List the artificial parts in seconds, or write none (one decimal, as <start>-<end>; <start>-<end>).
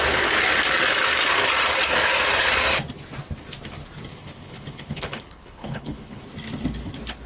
4.1-6.2